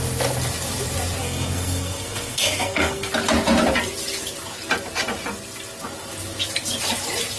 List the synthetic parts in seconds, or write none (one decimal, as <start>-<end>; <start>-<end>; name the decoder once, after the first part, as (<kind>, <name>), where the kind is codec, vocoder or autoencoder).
1.2-3.1 (codec, SNAC)